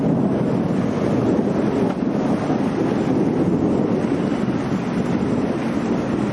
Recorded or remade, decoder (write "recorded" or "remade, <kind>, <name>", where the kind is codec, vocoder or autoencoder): recorded